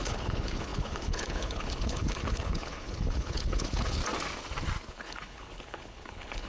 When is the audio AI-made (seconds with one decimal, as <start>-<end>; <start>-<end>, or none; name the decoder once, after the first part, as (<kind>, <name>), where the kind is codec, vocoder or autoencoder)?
0.0-4.0 (codec, HILCodec); 4.9-6.5